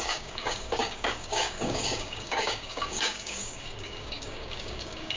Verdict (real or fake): fake